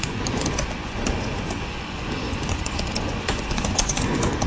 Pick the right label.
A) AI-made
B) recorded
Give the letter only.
A